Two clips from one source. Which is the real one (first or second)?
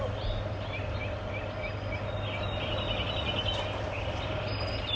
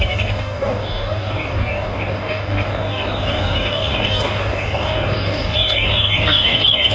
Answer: first